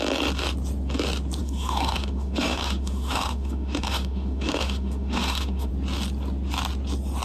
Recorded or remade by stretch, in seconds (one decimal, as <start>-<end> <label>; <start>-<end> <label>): 0.0-1.4 recorded; 1.4-5.7 remade; 5.7-7.2 recorded